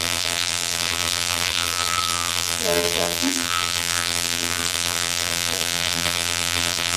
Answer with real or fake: fake